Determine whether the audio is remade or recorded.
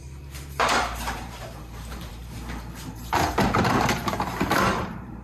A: remade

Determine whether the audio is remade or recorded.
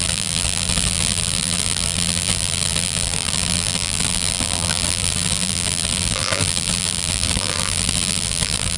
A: remade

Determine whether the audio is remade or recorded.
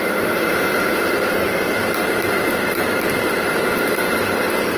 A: remade